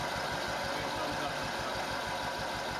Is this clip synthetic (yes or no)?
no